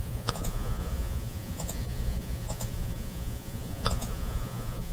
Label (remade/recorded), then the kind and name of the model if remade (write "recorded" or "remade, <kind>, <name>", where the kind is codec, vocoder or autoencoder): remade, vocoder, Vocos